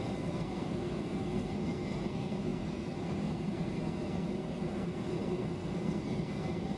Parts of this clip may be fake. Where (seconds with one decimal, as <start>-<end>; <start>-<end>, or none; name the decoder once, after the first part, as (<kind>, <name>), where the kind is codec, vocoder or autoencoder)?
0.0-6.8 (codec, SNAC)